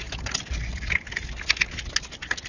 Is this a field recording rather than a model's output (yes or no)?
yes